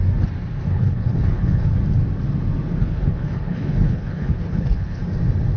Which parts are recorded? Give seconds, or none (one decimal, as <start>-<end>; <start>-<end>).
0.0-0.6; 1.8-2.8; 5.0-5.6